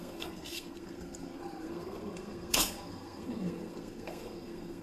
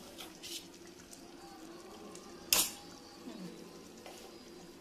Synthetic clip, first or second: first